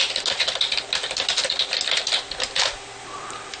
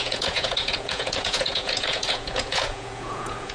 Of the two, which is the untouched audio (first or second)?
first